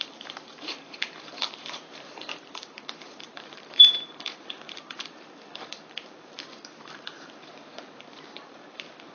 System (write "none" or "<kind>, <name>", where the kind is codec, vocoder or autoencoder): vocoder, BigVGAN v2